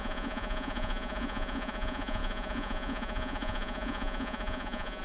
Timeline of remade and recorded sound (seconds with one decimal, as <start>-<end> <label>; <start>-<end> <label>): 0.0-5.0 remade